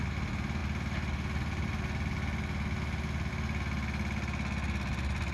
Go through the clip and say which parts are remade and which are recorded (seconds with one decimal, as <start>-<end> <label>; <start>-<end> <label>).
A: 0.0-5.3 recorded